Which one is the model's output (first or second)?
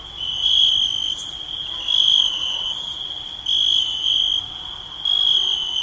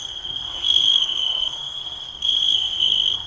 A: second